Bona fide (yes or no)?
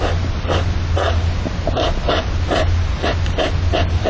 yes